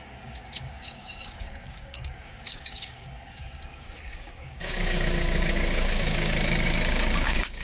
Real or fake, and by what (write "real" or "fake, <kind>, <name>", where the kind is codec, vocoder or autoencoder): fake, codec, DAC